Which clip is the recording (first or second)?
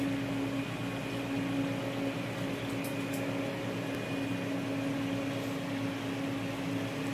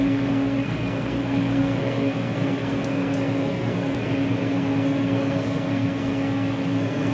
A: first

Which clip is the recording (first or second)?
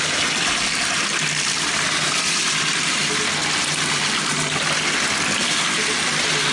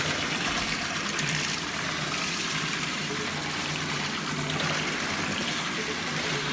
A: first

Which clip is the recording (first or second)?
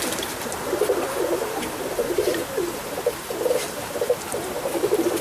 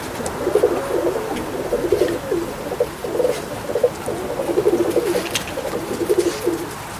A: second